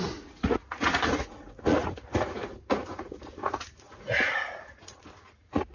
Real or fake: fake